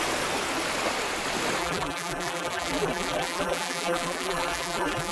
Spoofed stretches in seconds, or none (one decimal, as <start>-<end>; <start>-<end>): 1.6-5.1